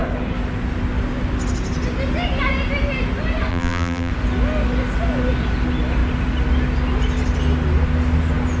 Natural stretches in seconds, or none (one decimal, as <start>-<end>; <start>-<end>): 0.0-3.5; 4.1-8.6